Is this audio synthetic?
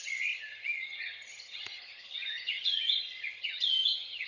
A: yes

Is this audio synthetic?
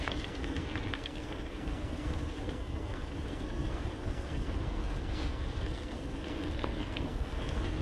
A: yes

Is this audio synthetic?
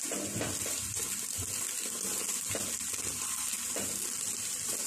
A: no